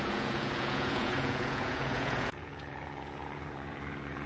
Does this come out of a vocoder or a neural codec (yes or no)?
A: yes